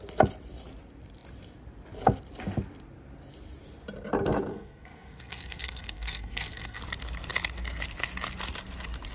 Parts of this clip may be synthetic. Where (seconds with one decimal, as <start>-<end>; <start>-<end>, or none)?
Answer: 4.5-6.8